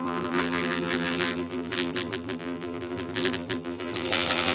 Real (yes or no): no